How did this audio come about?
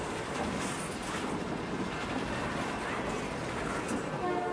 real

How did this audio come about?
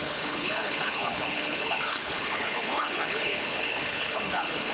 fake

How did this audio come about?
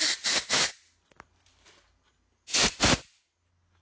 real